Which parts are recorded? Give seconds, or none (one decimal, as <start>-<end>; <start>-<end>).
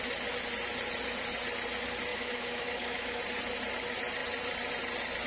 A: 0.0-2.1; 3.2-5.3